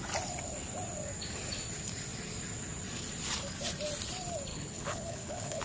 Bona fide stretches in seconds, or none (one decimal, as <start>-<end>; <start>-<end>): 0.0-4.5